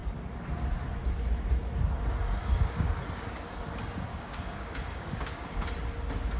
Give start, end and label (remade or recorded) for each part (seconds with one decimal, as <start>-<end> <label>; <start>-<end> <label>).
0.0-2.4 recorded; 2.4-2.9 remade; 2.9-4.1 recorded; 4.1-5.7 remade; 5.7-6.4 recorded